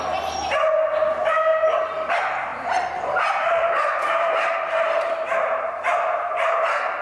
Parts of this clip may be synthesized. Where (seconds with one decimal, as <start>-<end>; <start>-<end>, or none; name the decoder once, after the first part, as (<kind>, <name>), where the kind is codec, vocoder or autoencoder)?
1.5-2.1 (vocoder, BigVGAN v2); 2.5-6.6